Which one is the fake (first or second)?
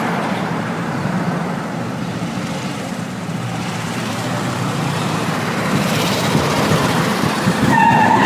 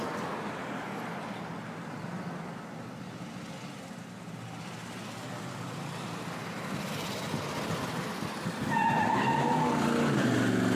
first